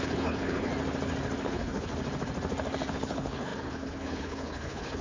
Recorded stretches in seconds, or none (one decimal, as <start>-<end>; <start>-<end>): 0.7-1.4; 1.9-2.9